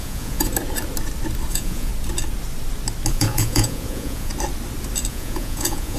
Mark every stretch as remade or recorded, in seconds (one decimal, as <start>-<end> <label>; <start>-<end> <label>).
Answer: 0.0-0.5 remade; 0.5-1.5 recorded; 1.5-1.9 remade; 1.9-3.1 recorded; 3.1-4.3 remade; 4.3-5.1 recorded; 5.1-6.0 remade